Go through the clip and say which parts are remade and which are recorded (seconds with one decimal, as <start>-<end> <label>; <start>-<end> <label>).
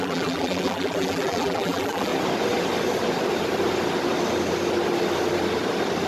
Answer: 0.0-2.1 remade; 2.1-6.1 recorded